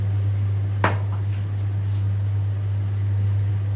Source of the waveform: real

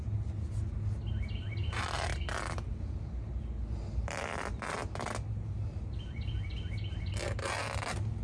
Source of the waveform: real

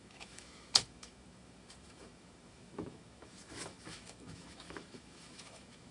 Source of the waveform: fake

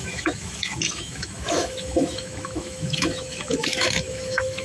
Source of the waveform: fake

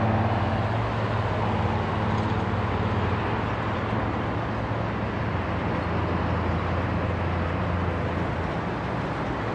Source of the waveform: real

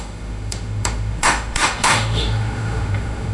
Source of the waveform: fake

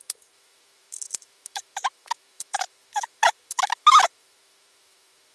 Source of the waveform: fake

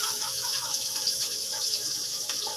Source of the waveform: fake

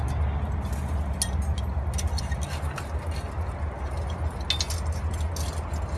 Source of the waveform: real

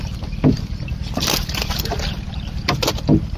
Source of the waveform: real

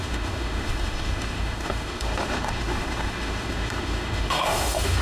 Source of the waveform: fake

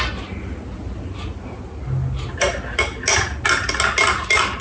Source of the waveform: real